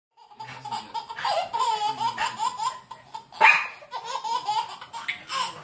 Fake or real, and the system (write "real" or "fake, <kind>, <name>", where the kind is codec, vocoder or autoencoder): real